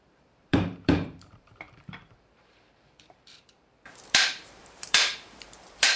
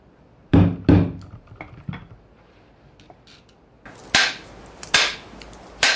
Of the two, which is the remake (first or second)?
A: first